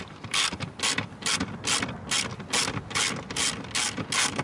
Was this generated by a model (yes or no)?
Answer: no